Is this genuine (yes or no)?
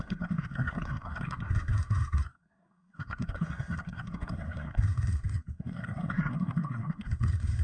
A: no